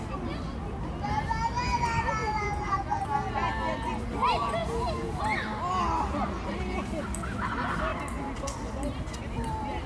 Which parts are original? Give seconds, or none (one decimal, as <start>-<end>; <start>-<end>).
0.0-2.2; 3.0-4.6; 5.2-9.9